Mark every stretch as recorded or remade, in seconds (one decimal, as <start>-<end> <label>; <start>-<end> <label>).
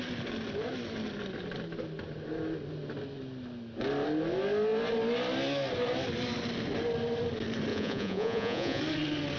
0.0-7.7 recorded; 7.7-8.8 remade; 8.8-9.4 recorded